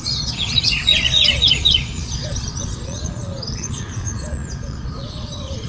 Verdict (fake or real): fake